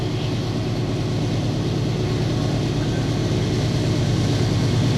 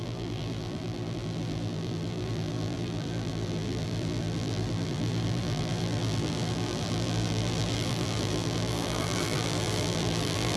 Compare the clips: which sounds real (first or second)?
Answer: first